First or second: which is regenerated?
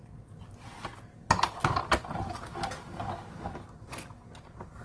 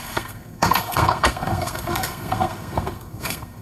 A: second